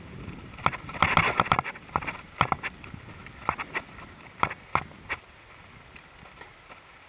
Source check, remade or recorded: recorded